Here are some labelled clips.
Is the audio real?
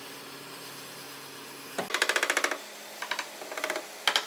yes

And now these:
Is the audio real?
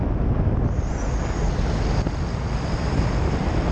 yes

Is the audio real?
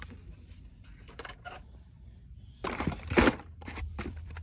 no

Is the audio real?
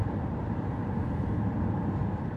no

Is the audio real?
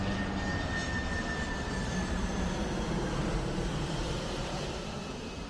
yes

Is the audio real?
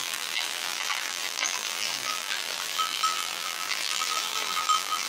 no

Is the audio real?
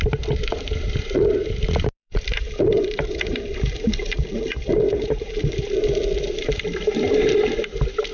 no